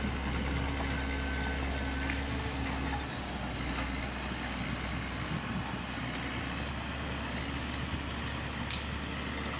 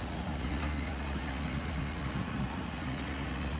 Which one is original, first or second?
first